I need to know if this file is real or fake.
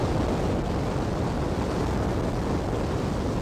real